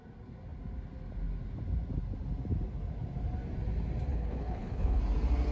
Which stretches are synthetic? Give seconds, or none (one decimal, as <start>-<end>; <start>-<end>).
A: 4.1-5.0